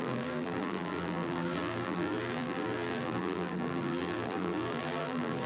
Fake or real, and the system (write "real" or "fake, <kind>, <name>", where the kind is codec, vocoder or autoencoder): fake, vocoder, BigVGAN v2